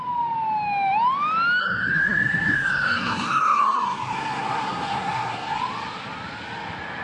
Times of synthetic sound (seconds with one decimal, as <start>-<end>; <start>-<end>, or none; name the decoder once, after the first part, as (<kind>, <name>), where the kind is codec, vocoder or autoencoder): 1.6-5.6 (codec, SNAC)